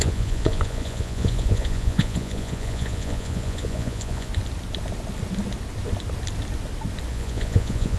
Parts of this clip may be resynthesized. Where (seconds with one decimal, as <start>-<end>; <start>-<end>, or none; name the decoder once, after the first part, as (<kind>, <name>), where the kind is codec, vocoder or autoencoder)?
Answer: 0.0-4.3 (vocoder, Vocos); 7.1-8.0